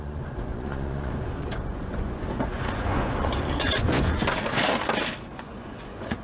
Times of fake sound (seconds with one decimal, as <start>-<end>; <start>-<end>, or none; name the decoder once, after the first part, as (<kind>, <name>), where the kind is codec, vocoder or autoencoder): 0.0-4.2 (vocoder, Vocos); 5.2-6.2